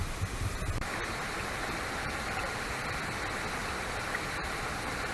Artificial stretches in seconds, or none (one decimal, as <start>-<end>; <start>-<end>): 1.6-3.0; 3.6-5.1